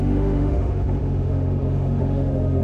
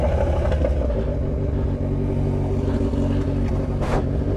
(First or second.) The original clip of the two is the second